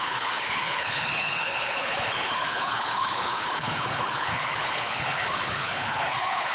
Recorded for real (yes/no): no